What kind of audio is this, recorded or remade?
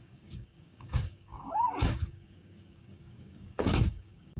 remade